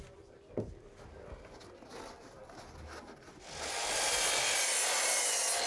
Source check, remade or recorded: recorded